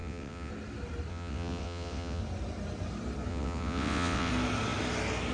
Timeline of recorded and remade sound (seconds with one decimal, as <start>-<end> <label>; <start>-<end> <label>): 0.0-0.5 remade; 0.5-1.1 recorded; 1.1-2.2 remade; 2.2-3.3 recorded; 3.3-4.3 remade; 4.3-5.3 recorded